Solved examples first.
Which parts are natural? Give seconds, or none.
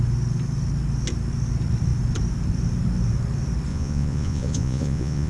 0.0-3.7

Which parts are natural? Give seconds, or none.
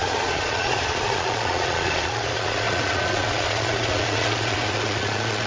none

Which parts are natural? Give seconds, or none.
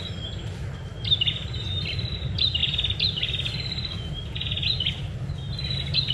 0.0-6.1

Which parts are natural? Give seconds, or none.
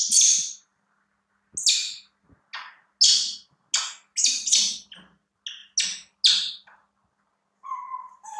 0.0-8.4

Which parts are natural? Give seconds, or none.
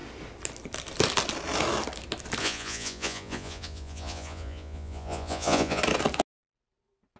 0.0-2.4; 5.8-7.2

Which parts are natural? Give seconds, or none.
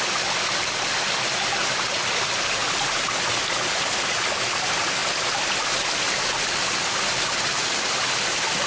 0.0-8.7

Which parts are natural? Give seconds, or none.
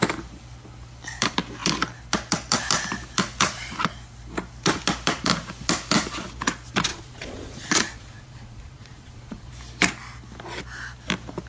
0.0-6.9; 9.5-11.5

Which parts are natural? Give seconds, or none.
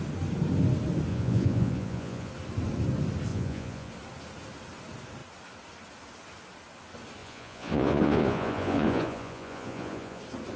0.0-1.1; 2.3-3.3; 3.9-7.2; 10.2-10.6